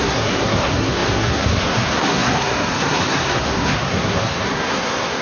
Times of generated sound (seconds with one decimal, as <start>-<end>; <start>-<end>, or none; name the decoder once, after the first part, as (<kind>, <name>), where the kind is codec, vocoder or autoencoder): 0.0-5.2 (codec, SNAC)